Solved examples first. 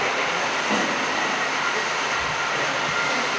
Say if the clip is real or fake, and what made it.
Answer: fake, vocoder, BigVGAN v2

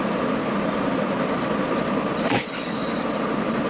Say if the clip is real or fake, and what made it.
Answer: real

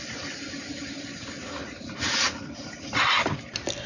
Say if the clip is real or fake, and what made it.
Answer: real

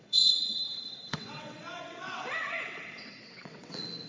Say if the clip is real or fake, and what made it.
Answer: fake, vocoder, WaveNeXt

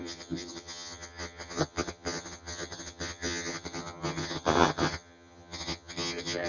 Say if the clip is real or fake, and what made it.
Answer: fake, vocoder, HiFi-GAN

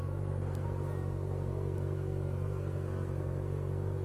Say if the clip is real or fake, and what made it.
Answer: fake, codec, SNAC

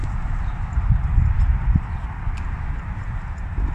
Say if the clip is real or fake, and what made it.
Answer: real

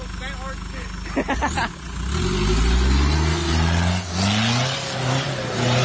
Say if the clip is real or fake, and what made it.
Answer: real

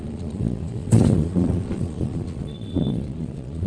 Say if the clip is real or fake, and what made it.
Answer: fake, vocoder, Vocos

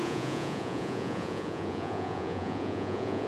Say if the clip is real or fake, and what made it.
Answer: fake, vocoder, Vocos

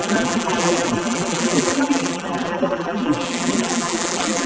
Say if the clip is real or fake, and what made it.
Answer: fake, vocoder, BigVGAN v2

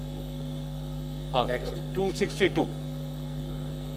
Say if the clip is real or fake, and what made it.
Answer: fake, codec, SNAC